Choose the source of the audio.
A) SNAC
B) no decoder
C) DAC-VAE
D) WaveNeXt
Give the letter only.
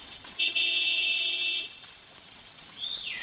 D